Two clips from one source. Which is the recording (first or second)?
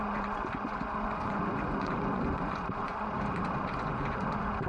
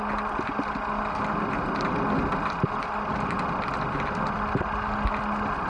second